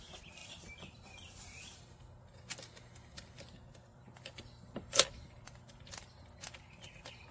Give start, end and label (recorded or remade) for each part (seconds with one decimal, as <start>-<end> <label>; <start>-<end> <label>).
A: 0.0-0.4 recorded; 0.4-1.8 remade; 1.8-3.9 recorded; 3.9-5.5 remade; 5.5-7.3 recorded